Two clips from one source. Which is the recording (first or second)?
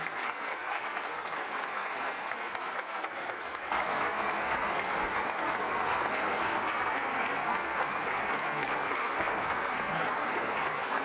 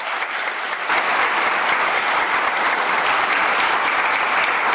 second